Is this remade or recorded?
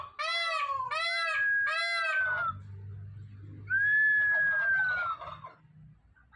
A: recorded